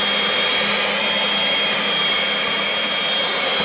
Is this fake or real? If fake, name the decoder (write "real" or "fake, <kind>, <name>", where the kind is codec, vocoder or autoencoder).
real